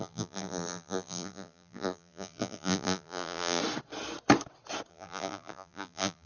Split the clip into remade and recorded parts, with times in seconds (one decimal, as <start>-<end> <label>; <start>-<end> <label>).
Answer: 0.0-3.6 remade; 3.6-4.9 recorded; 4.9-6.3 remade